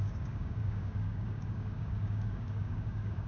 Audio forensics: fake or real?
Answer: fake